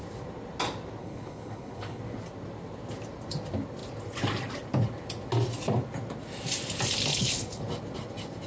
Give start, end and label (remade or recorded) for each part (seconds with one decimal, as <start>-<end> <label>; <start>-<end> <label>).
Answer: 0.0-1.0 recorded; 1.0-2.0 remade; 2.0-7.1 recorded; 7.1-7.6 remade; 7.6-8.5 recorded